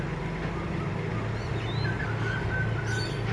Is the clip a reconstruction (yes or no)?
no